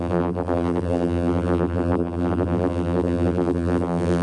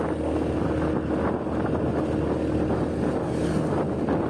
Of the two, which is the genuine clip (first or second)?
second